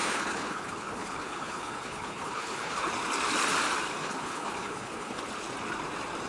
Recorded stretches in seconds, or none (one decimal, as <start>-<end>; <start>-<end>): 2.9-4.0; 5.2-6.3